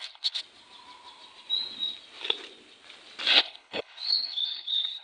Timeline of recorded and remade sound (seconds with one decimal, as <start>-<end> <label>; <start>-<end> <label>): 0.0-0.4 remade; 0.4-3.4 recorded; 3.4-5.0 remade